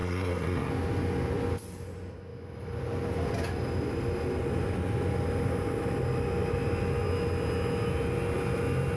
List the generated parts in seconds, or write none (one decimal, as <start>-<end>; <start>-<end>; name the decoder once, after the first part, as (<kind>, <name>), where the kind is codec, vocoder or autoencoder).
0.0-0.7 (codec, SNAC)